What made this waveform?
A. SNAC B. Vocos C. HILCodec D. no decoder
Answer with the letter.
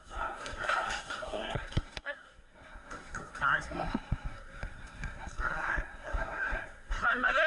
A